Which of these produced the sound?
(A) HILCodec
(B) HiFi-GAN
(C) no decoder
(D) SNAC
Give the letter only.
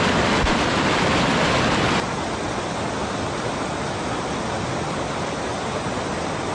C